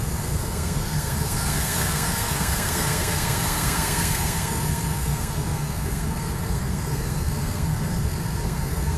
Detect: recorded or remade remade